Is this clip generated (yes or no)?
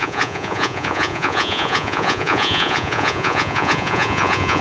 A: yes